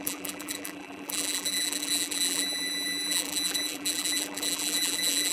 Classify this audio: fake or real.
fake